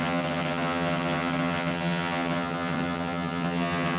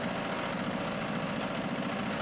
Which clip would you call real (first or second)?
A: second